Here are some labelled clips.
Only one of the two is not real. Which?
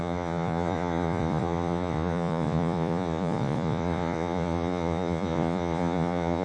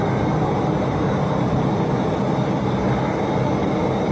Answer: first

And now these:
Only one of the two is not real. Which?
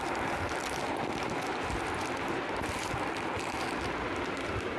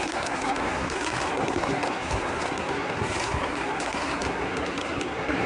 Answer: second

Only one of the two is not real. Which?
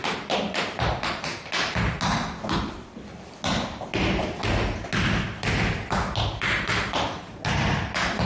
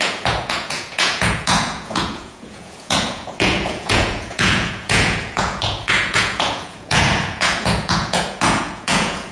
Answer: second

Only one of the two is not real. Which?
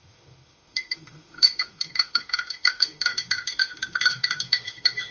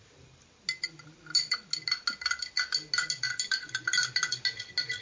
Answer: first